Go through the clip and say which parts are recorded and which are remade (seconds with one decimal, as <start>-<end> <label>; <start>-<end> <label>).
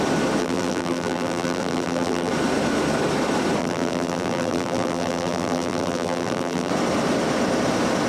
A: 0.0-0.4 recorded; 0.4-2.3 remade; 2.3-3.6 recorded; 3.6-6.7 remade; 6.7-8.1 recorded